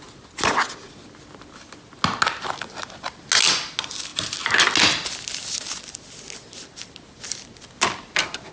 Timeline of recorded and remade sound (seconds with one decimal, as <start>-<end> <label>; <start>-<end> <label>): 0.0-8.5 recorded